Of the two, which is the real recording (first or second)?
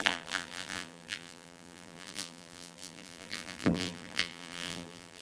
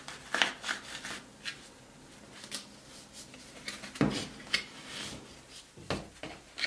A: second